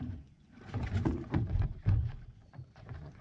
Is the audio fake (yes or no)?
yes